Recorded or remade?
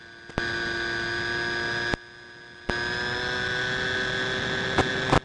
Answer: recorded